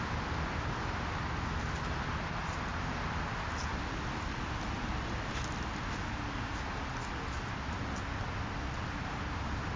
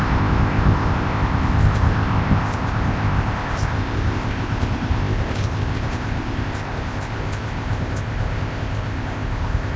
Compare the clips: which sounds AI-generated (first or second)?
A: second